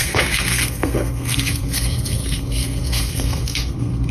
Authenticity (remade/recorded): remade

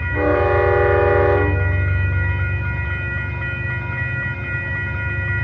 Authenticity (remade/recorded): recorded